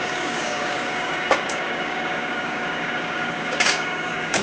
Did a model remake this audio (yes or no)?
yes